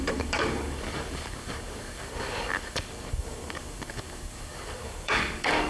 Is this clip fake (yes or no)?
yes